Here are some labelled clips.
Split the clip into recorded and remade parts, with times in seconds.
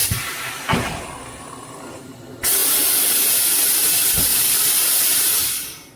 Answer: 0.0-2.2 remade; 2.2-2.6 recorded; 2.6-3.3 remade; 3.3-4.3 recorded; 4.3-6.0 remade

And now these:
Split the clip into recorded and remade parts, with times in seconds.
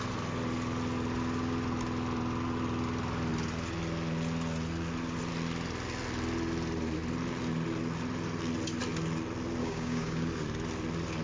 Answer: 0.0-9.6 recorded; 9.6-10.3 remade; 10.3-11.2 recorded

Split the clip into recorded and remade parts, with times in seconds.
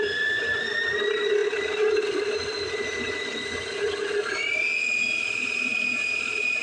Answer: 0.0-6.6 recorded